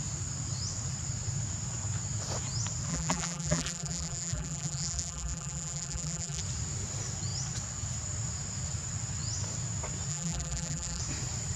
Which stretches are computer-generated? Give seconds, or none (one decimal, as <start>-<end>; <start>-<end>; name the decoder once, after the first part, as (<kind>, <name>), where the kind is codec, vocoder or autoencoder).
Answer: 2.9-6.4 (vocoder, BigVGAN v2); 10.1-11.0